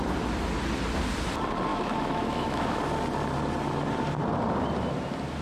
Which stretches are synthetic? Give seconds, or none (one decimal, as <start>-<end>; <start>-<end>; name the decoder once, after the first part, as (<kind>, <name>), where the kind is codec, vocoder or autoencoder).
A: 1.7-2.8 (autoencoder, DAC-VAE)